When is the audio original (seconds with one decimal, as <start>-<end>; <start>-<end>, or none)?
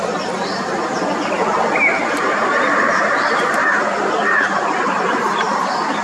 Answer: 0.0-2.0; 5.6-6.0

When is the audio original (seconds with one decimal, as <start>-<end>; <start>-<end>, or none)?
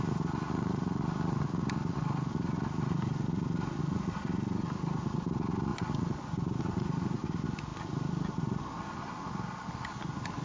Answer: 0.0-10.4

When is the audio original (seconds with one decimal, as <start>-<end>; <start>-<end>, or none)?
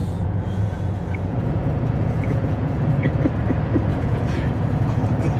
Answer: 3.2-3.9; 5.0-5.4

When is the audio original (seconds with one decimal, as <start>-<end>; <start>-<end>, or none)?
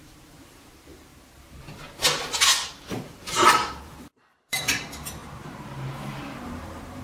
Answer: 1.1-2.9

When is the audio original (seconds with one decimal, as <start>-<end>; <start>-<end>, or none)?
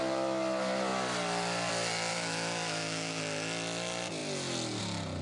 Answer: 0.0-2.1; 3.2-5.2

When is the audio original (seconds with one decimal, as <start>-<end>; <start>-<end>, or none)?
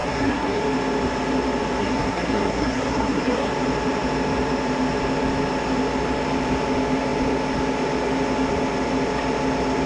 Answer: 0.6-1.8; 3.5-9.9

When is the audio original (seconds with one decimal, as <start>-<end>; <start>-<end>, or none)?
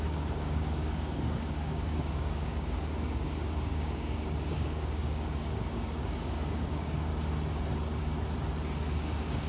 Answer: 7.1-9.0